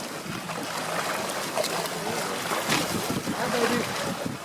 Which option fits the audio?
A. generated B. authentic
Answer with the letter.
B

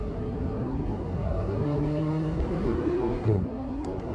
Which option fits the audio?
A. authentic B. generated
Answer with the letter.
B